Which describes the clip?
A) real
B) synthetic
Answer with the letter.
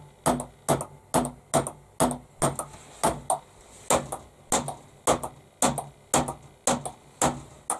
A